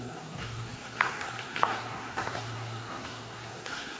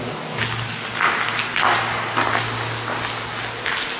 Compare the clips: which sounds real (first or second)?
second